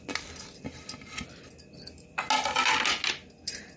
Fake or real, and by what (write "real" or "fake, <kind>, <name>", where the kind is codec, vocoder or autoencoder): real